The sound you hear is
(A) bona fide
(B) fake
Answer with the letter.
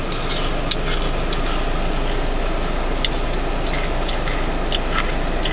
A